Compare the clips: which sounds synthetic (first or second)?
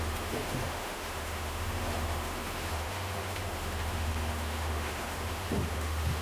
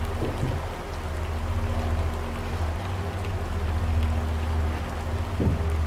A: first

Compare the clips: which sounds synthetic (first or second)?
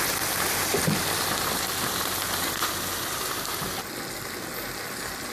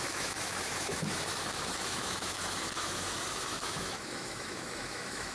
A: second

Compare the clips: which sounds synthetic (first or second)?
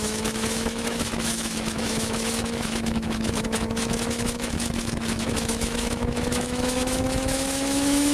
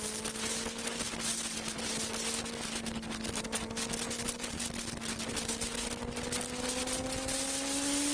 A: first